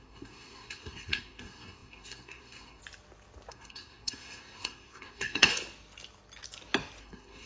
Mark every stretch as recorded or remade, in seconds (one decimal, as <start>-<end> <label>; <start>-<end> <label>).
0.0-2.8 remade; 2.8-3.5 recorded; 3.5-5.5 remade; 5.5-7.0 recorded; 7.0-7.5 remade